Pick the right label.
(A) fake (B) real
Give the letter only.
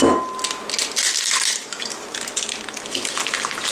B